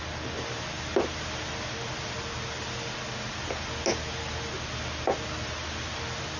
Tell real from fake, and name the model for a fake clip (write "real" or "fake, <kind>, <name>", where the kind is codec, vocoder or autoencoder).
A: real